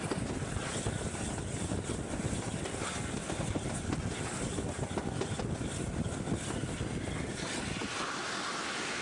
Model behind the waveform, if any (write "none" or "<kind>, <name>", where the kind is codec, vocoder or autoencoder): none